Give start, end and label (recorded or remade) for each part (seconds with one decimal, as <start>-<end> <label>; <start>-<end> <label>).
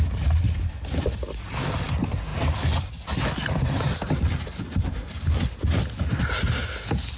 0.0-2.3 recorded; 2.3-6.2 remade; 6.2-7.2 recorded